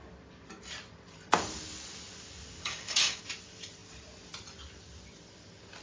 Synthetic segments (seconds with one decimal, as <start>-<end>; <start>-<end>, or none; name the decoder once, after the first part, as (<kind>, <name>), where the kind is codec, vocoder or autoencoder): 2.6-3.2 (codec, DAC)